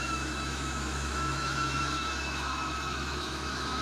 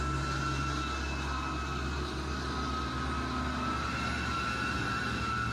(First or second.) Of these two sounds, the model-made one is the first